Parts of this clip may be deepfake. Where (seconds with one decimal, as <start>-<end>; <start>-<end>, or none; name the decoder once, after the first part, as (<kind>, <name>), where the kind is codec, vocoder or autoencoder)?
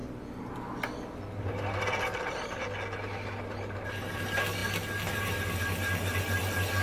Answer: none